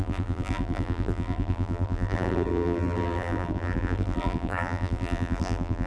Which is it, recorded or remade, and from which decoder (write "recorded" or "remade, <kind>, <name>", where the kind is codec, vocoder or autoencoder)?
remade, vocoder, BigVGAN v2